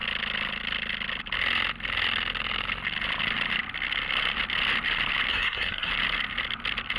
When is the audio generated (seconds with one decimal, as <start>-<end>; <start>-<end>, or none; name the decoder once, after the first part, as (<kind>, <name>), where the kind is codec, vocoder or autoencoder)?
5.3-5.9 (codec, SNAC)